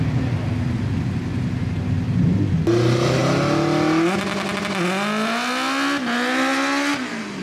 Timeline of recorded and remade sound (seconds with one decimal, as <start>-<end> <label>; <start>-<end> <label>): 0.0-7.4 recorded